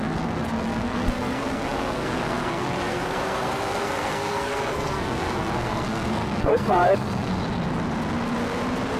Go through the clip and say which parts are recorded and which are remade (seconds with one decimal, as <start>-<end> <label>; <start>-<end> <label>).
0.0-7.3 remade; 7.3-9.0 recorded